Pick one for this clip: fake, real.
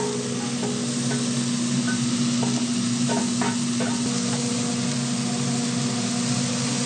real